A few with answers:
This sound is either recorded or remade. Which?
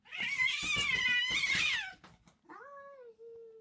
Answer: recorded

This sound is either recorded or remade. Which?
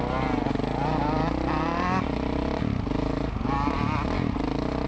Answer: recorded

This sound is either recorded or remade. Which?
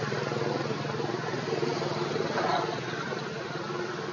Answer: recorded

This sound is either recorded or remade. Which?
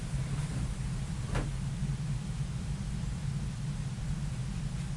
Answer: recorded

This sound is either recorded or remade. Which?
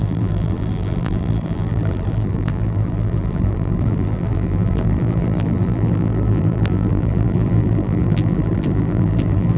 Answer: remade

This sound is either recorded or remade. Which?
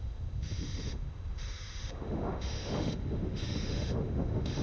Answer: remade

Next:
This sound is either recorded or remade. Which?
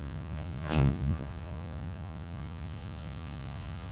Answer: remade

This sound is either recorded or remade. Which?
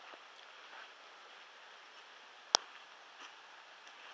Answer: recorded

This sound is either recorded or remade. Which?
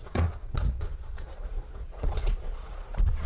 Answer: remade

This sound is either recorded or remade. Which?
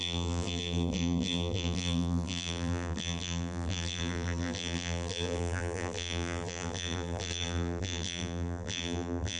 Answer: remade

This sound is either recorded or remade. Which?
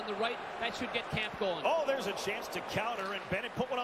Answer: recorded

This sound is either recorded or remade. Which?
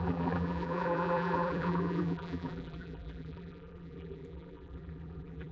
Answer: remade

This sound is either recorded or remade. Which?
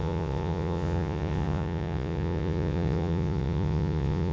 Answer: remade